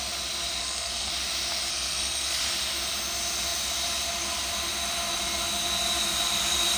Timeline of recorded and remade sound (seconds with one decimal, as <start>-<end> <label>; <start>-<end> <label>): 0.0-0.6 recorded; 0.6-1.1 remade; 1.1-1.7 recorded; 1.7-2.4 remade; 2.4-6.8 recorded